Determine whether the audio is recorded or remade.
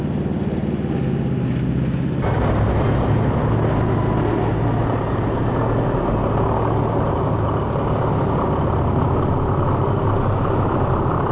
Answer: recorded